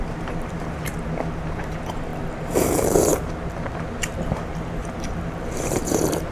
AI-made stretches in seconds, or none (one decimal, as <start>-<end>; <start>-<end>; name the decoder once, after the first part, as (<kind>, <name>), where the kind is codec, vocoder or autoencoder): 0.0-0.9 (vocoder, BigVGAN v2); 1.5-6.3